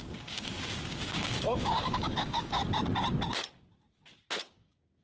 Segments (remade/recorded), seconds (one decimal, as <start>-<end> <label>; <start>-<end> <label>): 0.0-2.6 remade; 2.6-4.4 recorded; 4.4-5.0 remade